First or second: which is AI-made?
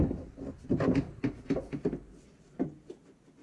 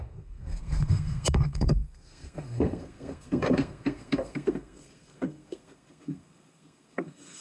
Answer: second